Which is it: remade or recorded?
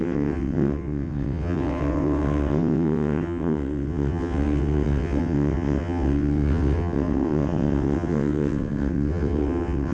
remade